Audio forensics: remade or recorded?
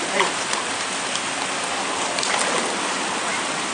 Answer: recorded